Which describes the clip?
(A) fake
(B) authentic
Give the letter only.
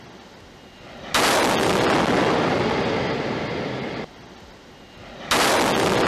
B